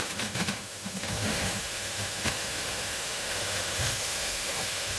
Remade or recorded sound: remade